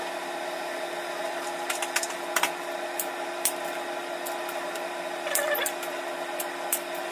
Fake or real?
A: fake